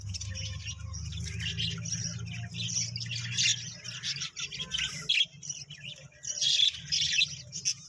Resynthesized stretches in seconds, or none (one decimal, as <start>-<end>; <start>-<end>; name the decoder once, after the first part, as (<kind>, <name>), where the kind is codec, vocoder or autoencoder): none